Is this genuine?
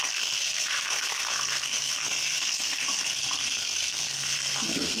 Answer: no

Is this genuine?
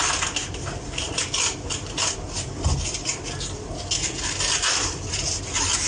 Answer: yes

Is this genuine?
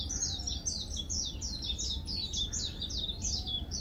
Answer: yes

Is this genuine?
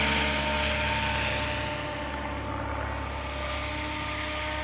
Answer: yes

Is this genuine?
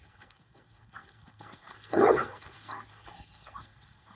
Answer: no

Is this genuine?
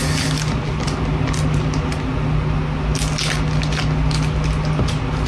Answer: yes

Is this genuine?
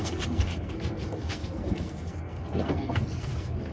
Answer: no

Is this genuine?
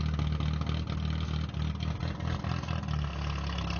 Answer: yes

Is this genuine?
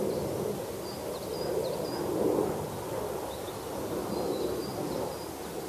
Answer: yes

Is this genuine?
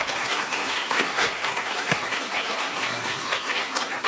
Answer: no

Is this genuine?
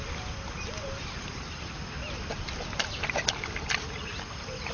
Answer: yes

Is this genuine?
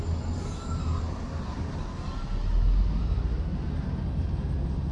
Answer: yes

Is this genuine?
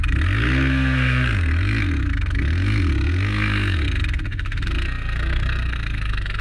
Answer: no